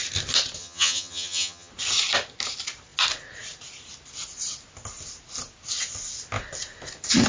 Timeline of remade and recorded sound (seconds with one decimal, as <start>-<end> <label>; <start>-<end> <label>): 0.0-0.6 recorded; 0.6-1.7 remade; 1.7-7.3 recorded